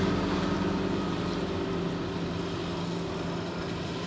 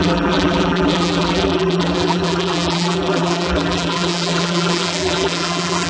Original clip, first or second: first